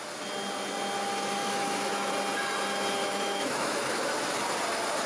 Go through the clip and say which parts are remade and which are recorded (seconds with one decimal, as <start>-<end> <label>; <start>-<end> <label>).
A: 0.0-1.4 recorded; 1.4-2.1 remade; 2.1-3.0 recorded; 3.0-4.0 remade; 4.0-5.1 recorded